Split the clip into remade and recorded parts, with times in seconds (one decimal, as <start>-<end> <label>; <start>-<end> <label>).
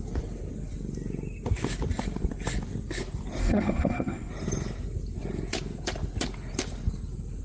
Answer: 0.0-3.4 recorded; 3.4-4.3 remade; 4.3-7.4 recorded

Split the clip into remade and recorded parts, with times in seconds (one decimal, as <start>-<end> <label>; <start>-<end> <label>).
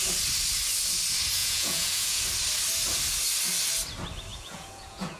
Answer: 0.0-1.4 recorded; 1.4-2.2 remade; 2.2-4.3 recorded; 4.3-5.2 remade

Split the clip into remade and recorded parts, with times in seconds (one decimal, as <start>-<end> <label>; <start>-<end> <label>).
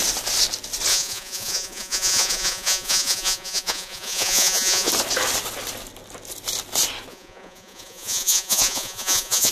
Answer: 0.0-0.9 recorded; 0.9-4.9 remade; 4.9-7.1 recorded; 7.1-9.5 remade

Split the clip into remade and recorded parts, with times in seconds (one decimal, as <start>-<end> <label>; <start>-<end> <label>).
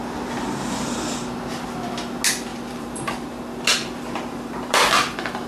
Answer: 0.0-2.5 recorded; 2.5-3.1 remade; 3.1-3.7 recorded; 3.7-4.8 remade; 4.8-5.5 recorded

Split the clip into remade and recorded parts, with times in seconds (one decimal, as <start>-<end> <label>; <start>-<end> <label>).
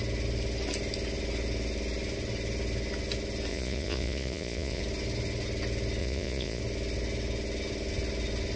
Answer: 0.0-3.5 recorded; 3.5-4.8 remade; 4.8-6.0 recorded; 6.0-6.6 remade; 6.6-8.6 recorded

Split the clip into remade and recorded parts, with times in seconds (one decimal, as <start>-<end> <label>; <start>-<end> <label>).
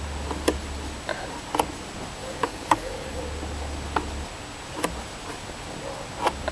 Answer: 0.0-2.2 recorded; 2.2-3.2 remade; 3.2-6.5 recorded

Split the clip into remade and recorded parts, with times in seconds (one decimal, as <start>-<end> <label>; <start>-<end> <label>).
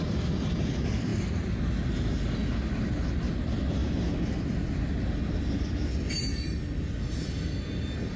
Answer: 0.0-8.2 recorded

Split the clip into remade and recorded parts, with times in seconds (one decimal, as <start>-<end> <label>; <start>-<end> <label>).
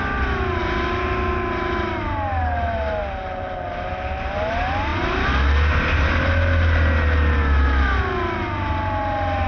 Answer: 0.0-9.5 recorded